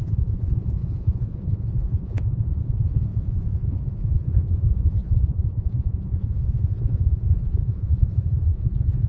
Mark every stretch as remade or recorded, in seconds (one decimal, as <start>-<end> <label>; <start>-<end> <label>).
0.0-9.1 remade